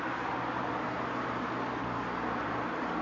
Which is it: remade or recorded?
recorded